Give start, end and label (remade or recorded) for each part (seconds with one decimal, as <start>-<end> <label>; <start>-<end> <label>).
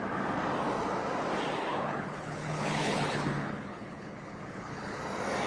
0.0-1.7 recorded; 1.7-5.0 remade; 5.0-5.5 recorded